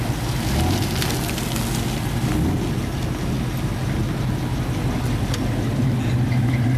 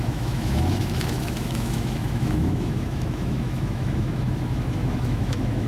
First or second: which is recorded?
first